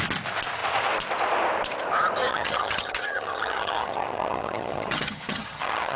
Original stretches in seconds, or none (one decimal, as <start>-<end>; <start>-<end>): 0.0-2.3